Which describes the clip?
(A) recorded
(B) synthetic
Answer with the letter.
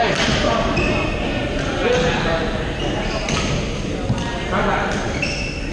A